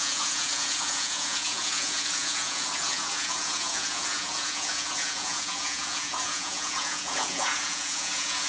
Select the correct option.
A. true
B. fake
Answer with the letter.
B